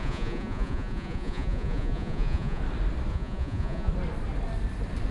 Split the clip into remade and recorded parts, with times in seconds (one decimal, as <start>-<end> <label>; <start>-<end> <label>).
0.0-2.6 remade; 2.6-3.1 recorded; 3.1-3.9 remade; 3.9-5.1 recorded